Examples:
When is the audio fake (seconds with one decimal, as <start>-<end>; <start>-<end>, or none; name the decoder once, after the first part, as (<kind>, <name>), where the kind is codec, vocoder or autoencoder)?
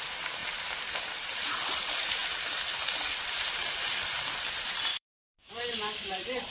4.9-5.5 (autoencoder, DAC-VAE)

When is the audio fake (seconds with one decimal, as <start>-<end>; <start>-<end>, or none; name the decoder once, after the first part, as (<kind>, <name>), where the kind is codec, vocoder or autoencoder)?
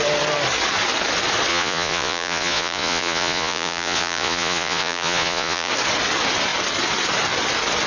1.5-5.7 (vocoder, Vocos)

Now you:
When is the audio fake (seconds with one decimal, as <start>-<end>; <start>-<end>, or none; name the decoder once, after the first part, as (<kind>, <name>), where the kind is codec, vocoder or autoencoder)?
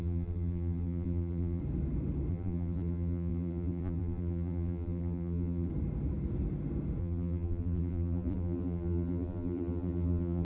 0.0-1.6 (vocoder, BigVGAN v2); 2.3-5.7; 7.0-10.4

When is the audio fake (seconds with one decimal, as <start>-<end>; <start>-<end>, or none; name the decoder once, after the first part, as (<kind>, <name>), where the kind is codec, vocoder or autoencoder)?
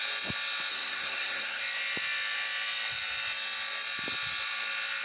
0.7-1.6 (codec, SNAC)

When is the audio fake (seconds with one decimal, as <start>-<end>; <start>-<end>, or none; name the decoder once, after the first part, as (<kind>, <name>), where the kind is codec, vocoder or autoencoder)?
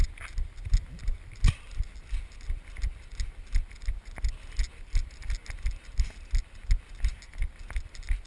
none